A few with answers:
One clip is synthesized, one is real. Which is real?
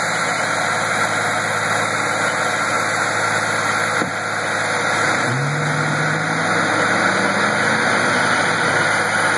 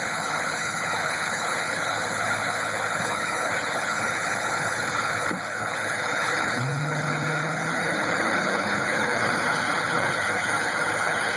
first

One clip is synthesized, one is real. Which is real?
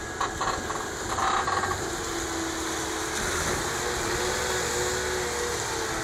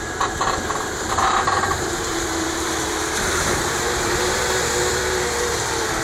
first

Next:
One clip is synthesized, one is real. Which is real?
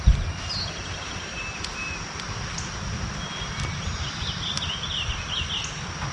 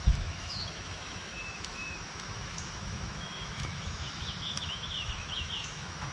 first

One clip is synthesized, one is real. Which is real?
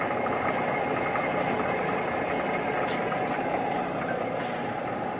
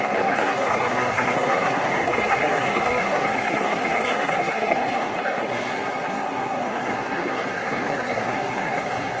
first